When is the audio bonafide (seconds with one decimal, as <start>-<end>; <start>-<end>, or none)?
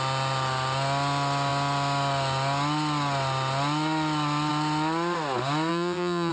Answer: 0.0-5.7